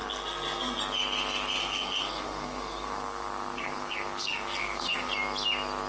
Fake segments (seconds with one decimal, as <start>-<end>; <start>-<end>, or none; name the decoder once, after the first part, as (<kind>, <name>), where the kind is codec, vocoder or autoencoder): 0.0-0.8 (codec, SNAC); 1.6-5.1